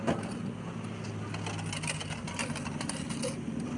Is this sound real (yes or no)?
yes